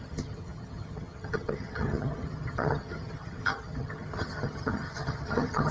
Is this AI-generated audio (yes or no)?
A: yes